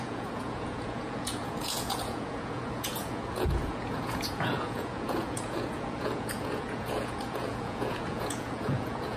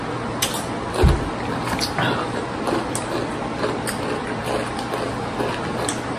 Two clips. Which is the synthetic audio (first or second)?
first